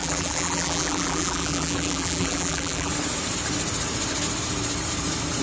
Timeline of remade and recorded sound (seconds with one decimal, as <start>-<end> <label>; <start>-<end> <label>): 0.0-2.9 remade; 2.9-5.4 recorded